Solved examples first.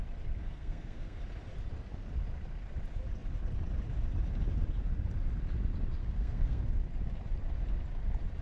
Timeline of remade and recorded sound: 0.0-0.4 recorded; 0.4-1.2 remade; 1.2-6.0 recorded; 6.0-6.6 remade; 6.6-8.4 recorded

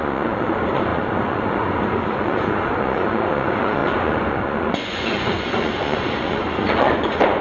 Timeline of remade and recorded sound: 0.0-7.4 remade

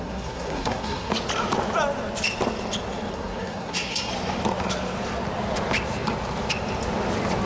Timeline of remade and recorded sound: 0.0-1.1 remade; 1.1-3.1 recorded; 3.1-4.1 remade; 4.1-7.5 recorded